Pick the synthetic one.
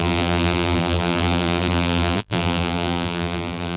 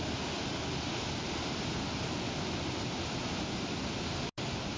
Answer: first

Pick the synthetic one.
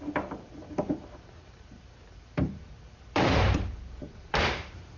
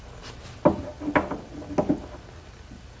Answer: first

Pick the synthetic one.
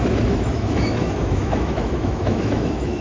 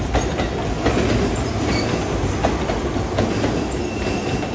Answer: first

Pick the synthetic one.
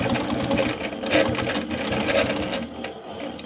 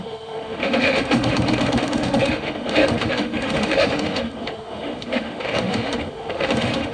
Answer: second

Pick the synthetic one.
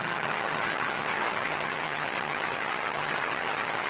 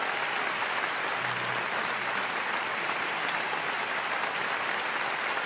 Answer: first